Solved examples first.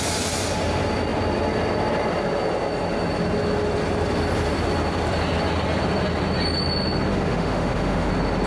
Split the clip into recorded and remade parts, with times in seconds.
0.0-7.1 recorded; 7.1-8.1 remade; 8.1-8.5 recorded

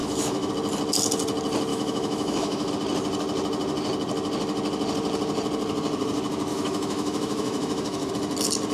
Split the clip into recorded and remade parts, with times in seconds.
0.0-0.5 remade; 0.5-1.7 recorded; 1.7-2.7 remade; 2.7-6.5 recorded; 6.5-8.1 remade; 8.1-8.7 recorded